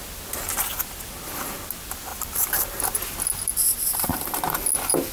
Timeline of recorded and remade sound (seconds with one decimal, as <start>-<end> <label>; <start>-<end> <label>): 0.0-2.1 recorded; 2.1-2.8 remade; 2.8-3.5 recorded; 3.5-4.5 remade; 4.5-5.1 recorded